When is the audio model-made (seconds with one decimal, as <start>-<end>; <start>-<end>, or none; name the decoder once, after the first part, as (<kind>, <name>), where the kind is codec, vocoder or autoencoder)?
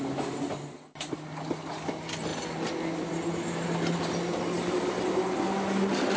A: none